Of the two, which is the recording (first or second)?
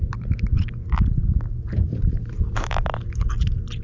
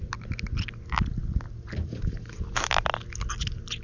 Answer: second